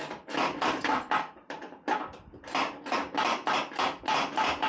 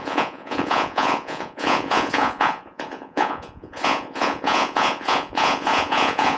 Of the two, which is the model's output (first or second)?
second